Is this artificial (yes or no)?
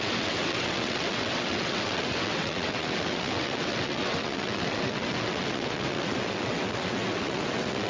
yes